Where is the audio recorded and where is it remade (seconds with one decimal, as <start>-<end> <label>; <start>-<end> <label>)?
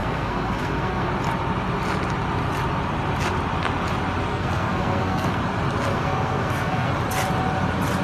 0.0-1.1 remade; 1.1-4.3 recorded; 4.3-5.4 remade; 5.4-5.9 recorded; 5.9-6.9 remade; 6.9-8.0 recorded